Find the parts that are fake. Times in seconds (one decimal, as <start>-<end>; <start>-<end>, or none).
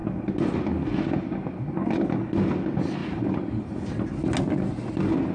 none